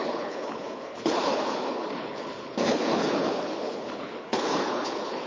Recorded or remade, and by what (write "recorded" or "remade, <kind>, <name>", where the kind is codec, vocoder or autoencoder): remade, codec, HILCodec